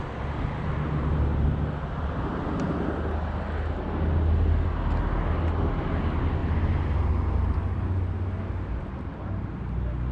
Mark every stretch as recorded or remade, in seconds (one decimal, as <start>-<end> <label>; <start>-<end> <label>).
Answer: 0.0-10.1 recorded